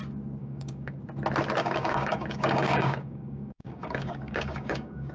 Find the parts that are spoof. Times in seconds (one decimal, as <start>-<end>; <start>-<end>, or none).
0.4-1.0; 1.6-5.1